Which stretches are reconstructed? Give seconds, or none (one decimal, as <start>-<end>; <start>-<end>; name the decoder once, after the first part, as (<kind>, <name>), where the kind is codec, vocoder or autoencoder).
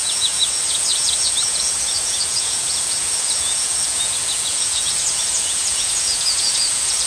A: 0.0-7.1 (vocoder, Vocos)